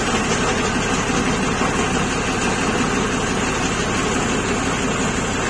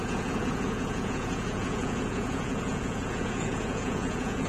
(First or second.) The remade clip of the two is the second